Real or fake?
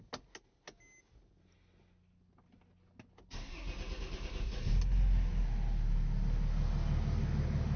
real